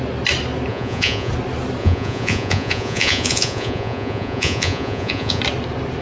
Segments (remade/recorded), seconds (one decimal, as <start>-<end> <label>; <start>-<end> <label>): 0.0-0.7 recorded; 0.7-1.3 remade; 1.3-1.8 recorded; 1.8-5.4 remade; 5.4-6.0 recorded